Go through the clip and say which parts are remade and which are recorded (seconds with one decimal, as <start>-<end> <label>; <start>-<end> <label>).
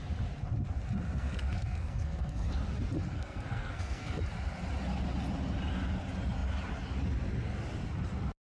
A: 0.0-1.1 recorded; 1.1-2.5 remade; 2.5-3.1 recorded; 3.1-4.2 remade; 4.2-8.5 recorded